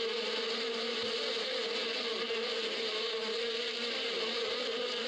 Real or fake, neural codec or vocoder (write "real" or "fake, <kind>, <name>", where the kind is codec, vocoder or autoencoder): real